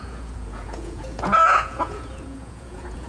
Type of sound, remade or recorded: remade